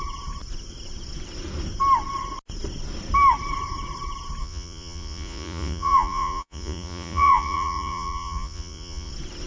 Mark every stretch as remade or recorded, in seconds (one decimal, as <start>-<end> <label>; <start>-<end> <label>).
0.0-4.4 recorded; 4.4-9.1 remade; 9.1-9.5 recorded